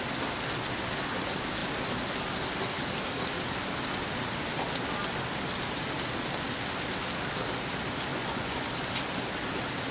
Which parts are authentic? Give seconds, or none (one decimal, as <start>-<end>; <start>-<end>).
0.0-8.1; 8.7-9.9